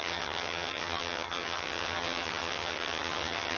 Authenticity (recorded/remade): remade